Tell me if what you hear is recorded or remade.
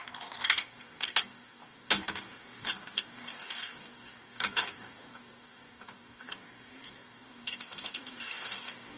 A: remade